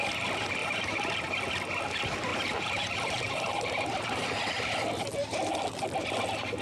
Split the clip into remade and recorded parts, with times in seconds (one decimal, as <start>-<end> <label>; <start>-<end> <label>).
0.0-0.6 recorded; 0.6-1.3 remade; 1.3-2.3 recorded; 2.3-4.4 remade; 4.4-6.6 recorded